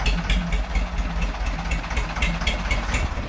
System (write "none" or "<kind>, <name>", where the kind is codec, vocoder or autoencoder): none